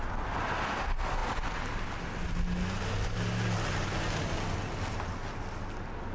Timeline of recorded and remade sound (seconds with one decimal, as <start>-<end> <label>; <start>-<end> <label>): 0.0-6.1 recorded